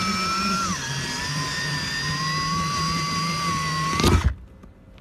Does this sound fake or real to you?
real